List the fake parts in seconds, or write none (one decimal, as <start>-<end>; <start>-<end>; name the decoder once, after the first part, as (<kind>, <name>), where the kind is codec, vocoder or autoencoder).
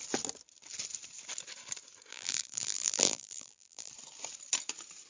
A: 2.1-3.9 (vocoder, BigVGAN v2)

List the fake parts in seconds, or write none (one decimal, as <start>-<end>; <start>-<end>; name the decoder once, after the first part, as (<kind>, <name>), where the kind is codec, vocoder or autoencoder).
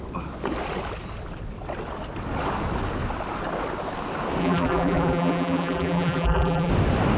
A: 4.4-6.7 (vocoder, BigVGAN v2)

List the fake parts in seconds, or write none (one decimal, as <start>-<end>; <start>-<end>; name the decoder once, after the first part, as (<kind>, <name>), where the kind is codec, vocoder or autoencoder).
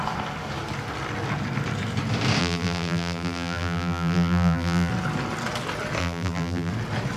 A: 2.4-4.9 (vocoder, BigVGAN v2); 6.0-6.7